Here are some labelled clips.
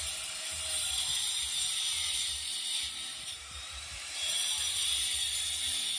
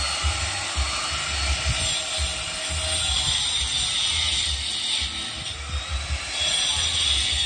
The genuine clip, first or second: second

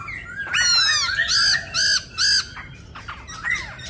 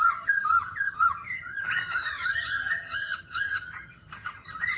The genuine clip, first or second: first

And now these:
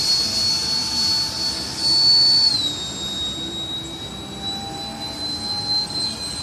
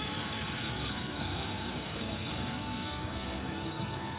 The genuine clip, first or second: first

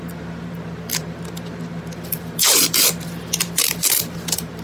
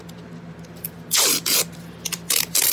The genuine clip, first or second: second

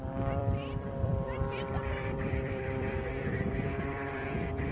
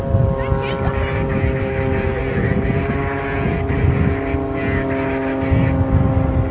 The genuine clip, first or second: second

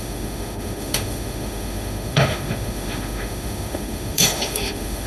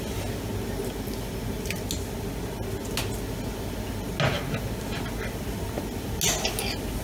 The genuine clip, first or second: second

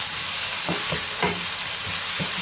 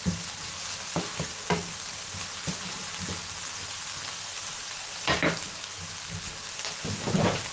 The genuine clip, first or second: second